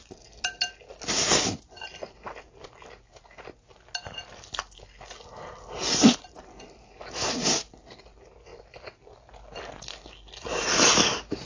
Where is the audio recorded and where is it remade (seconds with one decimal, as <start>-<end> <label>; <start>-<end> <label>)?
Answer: 0.0-11.5 recorded